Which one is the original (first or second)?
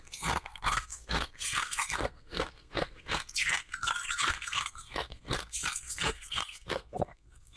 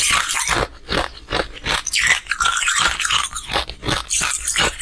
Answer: second